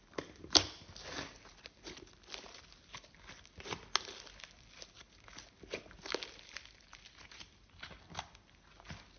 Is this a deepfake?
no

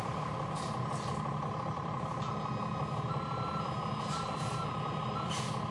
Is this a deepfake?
no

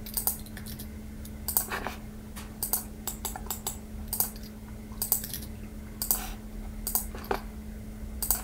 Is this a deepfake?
no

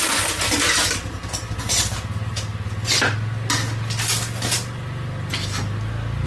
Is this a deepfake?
no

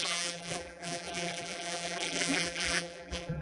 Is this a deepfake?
yes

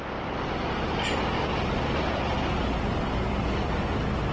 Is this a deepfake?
no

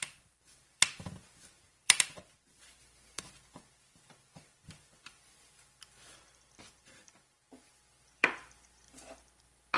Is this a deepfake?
yes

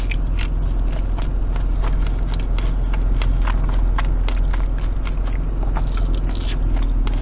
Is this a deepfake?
no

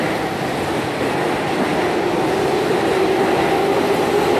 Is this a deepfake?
yes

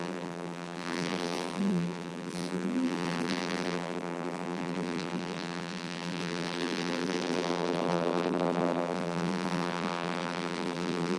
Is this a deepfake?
yes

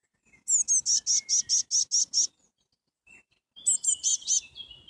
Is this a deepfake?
no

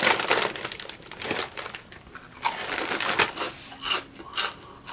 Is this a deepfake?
no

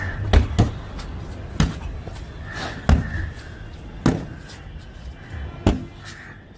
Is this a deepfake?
no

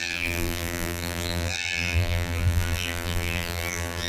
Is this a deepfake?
yes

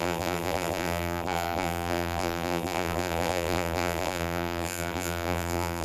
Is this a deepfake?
yes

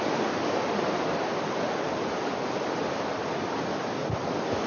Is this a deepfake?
yes